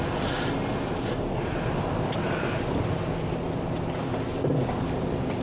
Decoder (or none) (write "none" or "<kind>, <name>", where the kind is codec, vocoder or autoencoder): none